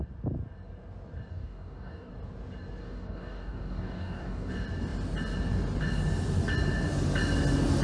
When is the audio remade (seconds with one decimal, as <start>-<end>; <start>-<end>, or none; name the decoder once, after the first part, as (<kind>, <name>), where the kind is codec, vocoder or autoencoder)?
1.3-2.1 (codec, DAC); 2.8-4.5